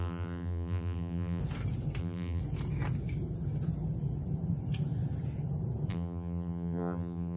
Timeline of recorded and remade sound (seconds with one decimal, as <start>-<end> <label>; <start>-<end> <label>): 0.0-1.4 remade; 1.4-2.0 recorded; 2.0-2.4 remade; 2.4-5.9 recorded; 5.9-7.4 remade